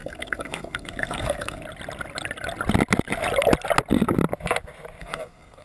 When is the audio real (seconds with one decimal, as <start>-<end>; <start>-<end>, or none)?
1.6-5.0